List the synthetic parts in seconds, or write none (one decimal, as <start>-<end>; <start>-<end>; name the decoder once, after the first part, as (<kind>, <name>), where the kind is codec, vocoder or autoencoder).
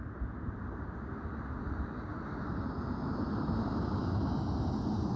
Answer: 2.1-5.2 (vocoder, BigVGAN v2)